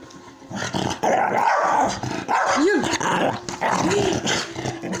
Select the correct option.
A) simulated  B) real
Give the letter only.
B